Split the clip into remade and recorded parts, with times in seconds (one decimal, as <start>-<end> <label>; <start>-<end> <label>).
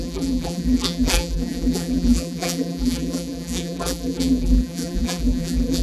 0.0-5.8 remade